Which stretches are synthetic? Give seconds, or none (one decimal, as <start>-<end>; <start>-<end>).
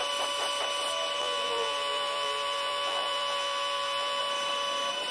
1.2-4.2